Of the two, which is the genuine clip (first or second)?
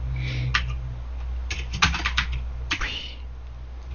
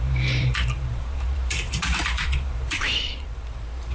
first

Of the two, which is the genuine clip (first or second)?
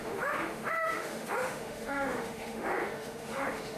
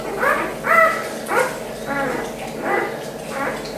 second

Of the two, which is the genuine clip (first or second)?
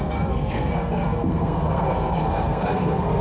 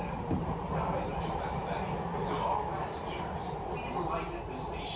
second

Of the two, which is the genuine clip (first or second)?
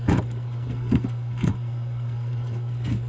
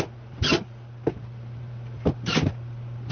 second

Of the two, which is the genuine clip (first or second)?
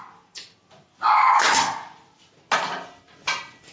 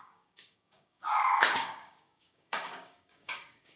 first